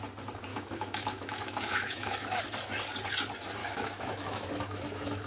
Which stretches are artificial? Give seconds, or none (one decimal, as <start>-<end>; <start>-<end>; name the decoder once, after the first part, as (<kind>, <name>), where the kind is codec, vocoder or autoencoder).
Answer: 0.5-2.4 (autoencoder, DAC-VAE); 3.6-5.3